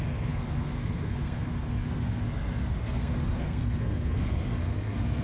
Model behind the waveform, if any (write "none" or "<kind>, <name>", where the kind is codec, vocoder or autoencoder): codec, SNAC